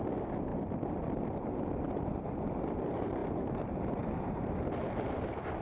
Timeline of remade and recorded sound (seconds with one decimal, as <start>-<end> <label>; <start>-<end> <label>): 0.0-5.6 recorded